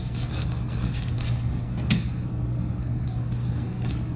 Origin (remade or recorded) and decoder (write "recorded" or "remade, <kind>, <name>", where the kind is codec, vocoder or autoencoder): remade, codec, SNAC